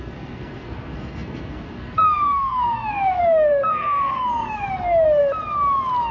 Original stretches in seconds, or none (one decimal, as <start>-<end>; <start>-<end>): 5.2-6.1